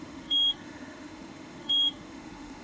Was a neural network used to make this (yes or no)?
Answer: yes